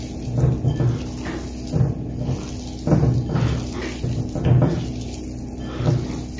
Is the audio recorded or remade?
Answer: recorded